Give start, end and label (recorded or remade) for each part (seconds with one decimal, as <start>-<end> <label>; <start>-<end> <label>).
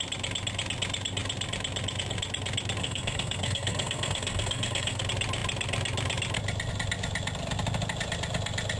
0.0-2.8 recorded; 2.8-5.0 remade; 5.0-8.8 recorded